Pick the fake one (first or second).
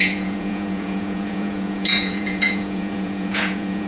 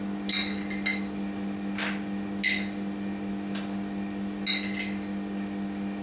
first